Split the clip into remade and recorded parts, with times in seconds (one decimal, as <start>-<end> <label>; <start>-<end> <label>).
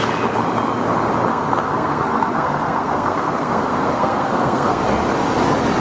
0.0-1.3 recorded; 1.3-4.8 remade; 4.8-5.8 recorded